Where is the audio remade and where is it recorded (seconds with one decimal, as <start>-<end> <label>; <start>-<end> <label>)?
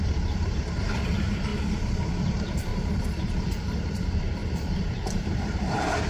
0.0-1.5 remade; 1.5-2.3 recorded; 2.3-2.7 remade; 2.7-3.4 recorded; 3.4-6.1 remade